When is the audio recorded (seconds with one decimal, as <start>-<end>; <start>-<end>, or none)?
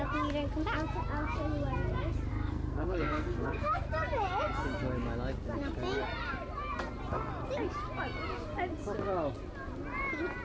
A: 0.0-2.3; 3.9-10.4